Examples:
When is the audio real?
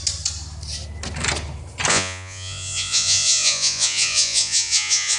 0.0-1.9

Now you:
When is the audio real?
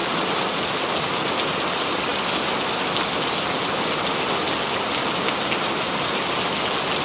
0.0-7.0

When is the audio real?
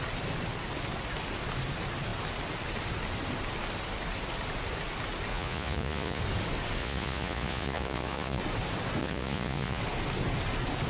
0.0-5.3; 6.2-6.8; 8.4-9.0; 9.8-10.9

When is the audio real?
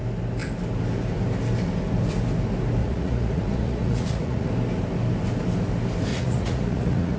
0.0-2.8; 4.5-6.1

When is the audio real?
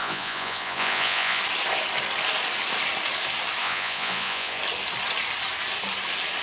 1.4-3.6; 4.6-6.4